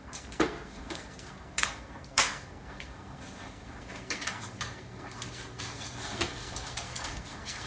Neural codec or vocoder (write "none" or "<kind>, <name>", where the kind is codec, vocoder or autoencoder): codec, SNAC